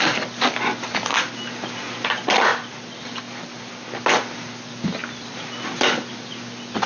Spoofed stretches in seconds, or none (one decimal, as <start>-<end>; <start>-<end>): none